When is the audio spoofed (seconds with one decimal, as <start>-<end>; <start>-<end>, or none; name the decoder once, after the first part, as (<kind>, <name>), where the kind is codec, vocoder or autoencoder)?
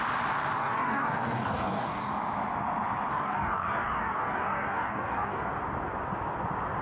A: 0.6-2.1 (codec, DAC); 3.1-5.5